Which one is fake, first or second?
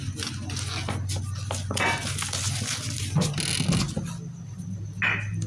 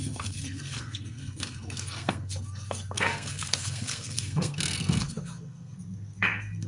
second